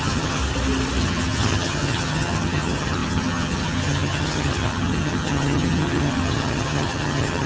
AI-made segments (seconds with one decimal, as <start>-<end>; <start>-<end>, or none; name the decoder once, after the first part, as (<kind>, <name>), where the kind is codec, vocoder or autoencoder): 0.0-0.4 (vocoder, HiFi-GAN); 1.0-7.5